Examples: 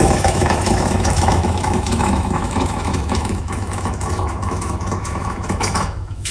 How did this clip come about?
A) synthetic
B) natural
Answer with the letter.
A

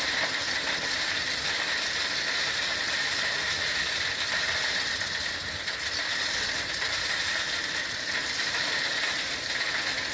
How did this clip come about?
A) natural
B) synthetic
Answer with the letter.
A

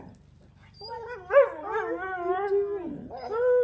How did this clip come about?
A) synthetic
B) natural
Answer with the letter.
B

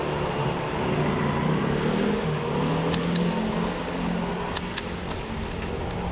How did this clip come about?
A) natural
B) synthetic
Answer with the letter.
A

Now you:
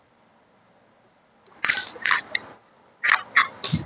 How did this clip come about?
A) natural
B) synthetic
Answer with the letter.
A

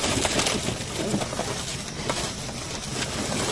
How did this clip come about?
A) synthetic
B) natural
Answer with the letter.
B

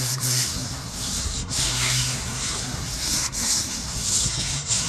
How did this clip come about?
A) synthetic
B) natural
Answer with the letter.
A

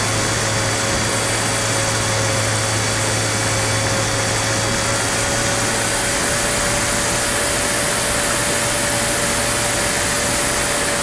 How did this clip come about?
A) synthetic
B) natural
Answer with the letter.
B